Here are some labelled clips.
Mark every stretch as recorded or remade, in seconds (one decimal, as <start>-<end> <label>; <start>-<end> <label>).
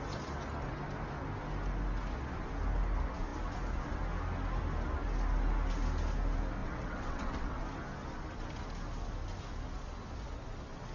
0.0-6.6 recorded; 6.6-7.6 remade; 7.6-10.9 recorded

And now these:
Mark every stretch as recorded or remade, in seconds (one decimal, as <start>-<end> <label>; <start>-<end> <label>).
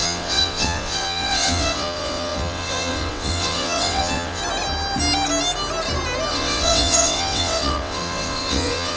0.0-4.4 remade; 4.4-6.3 recorded; 6.3-9.0 remade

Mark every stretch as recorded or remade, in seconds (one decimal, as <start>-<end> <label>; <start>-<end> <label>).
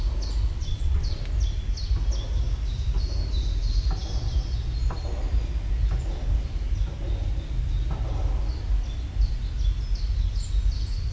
0.0-0.5 recorded; 0.5-1.2 remade; 1.2-11.1 recorded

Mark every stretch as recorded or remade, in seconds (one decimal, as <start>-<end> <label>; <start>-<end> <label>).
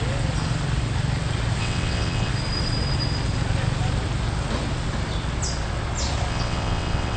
0.0-1.6 recorded; 1.6-2.3 remade; 2.3-6.3 recorded; 6.3-7.2 remade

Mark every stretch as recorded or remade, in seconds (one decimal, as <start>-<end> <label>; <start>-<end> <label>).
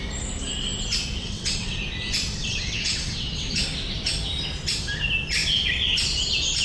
0.0-1.2 recorded; 1.2-1.8 remade; 1.8-2.4 recorded; 2.4-3.6 remade; 3.6-6.6 recorded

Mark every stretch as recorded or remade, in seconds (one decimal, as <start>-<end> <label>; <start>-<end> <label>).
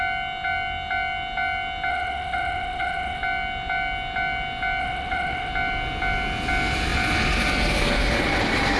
0.0-1.9 recorded; 1.9-3.2 remade; 3.2-4.8 recorded; 4.8-5.5 remade; 5.5-8.8 recorded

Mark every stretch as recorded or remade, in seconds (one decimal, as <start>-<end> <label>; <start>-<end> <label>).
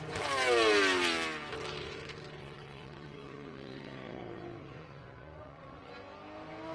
0.0-2.4 recorded; 2.4-5.9 remade; 5.9-6.7 recorded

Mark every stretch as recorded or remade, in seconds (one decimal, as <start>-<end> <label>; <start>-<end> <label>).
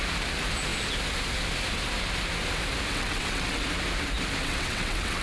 0.0-2.9 recorded; 2.9-3.6 remade; 3.6-4.4 recorded; 4.4-5.2 remade